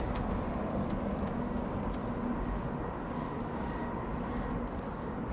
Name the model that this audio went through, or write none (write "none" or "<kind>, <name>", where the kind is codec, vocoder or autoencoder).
none